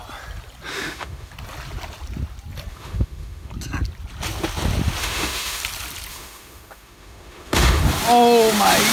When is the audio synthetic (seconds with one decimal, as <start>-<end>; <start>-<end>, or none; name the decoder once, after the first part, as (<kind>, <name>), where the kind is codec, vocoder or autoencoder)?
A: 0.7-1.3 (autoencoder, DAC-VAE); 2.7-3.5; 5.0-5.6; 6.1-7.8